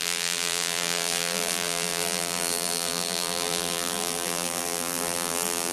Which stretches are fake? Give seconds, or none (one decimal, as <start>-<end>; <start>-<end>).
0.0-5.7